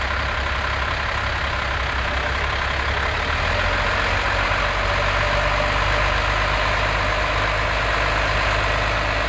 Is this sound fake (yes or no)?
no